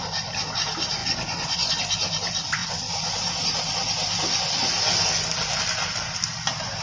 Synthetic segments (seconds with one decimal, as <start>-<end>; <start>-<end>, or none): 1.0-1.7

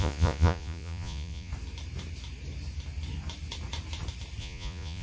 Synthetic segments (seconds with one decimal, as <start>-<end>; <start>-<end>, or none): 0.0-1.5; 4.4-5.0

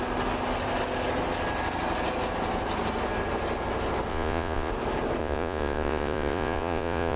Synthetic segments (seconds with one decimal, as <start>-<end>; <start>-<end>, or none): 4.1-4.7; 5.2-7.2

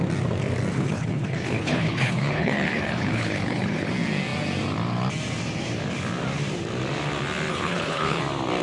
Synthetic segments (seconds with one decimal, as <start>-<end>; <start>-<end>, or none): 0.7-3.9; 7.5-8.2

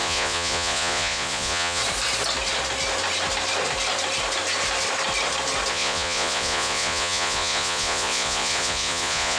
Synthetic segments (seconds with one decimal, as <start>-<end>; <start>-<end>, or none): 0.0-1.8; 5.7-9.4

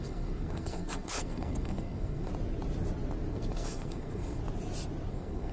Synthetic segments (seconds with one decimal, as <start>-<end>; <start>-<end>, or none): 0.0-2.3; 3.3-4.4; 5.1-5.5

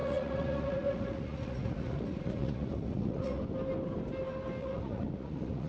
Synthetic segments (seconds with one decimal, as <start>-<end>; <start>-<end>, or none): 0.0-3.4; 4.6-5.7

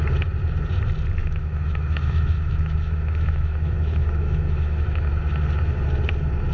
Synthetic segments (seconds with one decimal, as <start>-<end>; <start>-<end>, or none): 1.2-5.1